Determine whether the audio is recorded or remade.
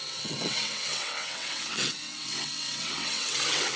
remade